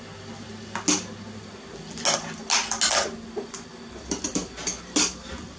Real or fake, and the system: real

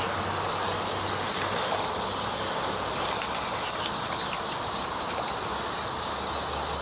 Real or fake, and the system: real